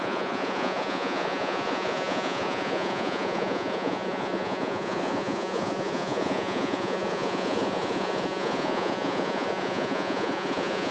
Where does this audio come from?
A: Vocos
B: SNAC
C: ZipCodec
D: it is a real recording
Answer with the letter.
A